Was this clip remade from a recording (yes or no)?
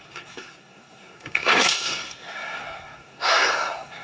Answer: yes